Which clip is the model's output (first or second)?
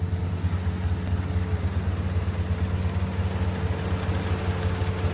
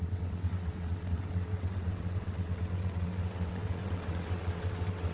second